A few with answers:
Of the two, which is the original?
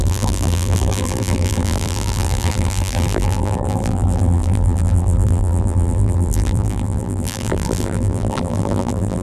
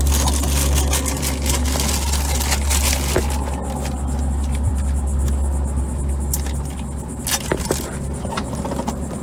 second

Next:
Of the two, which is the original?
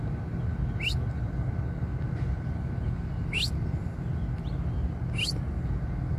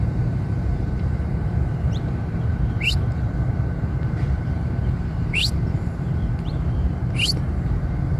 first